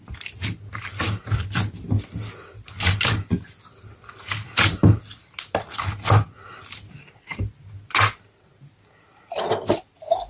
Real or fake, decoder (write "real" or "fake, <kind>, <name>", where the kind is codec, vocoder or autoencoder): real